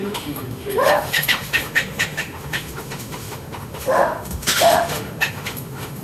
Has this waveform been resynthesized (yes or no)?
yes